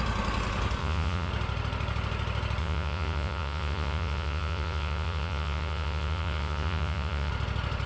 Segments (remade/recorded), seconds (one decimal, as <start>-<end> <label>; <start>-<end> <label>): 0.0-0.8 recorded; 0.8-1.3 remade; 1.3-2.6 recorded; 2.6-7.3 remade; 7.3-7.9 recorded